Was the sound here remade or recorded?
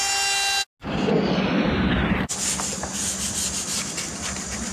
recorded